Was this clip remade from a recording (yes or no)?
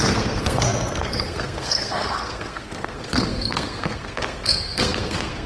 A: yes